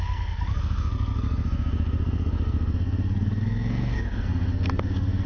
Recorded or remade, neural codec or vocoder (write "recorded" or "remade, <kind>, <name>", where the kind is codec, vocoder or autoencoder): remade, codec, SNAC